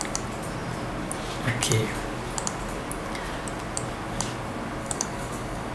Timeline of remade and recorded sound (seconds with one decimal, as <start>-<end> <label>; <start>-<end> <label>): 0.0-4.8 recorded; 4.8-5.7 remade